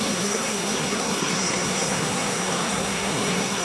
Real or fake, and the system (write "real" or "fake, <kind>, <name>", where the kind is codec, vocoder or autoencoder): fake, codec, SNAC